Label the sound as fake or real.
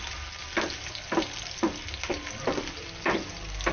real